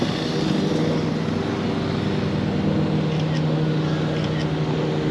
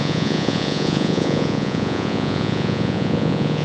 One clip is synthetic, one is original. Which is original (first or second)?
first